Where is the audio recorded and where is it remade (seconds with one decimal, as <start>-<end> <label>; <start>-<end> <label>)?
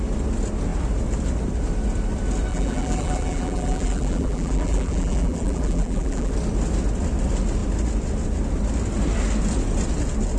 0.0-2.5 recorded; 2.5-6.3 remade; 6.3-10.4 recorded